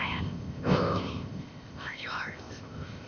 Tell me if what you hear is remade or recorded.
remade